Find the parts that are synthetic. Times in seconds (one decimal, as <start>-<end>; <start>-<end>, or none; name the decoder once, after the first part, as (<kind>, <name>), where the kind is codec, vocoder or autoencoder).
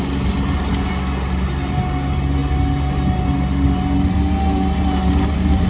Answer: none